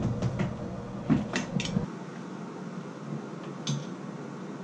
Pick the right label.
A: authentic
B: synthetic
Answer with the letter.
A